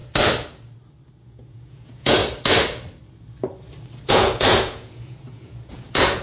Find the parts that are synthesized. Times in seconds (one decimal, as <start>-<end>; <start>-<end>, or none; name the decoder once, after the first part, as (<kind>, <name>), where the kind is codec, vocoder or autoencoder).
1.2-2.2 (vocoder, Vocos); 4.1-6.2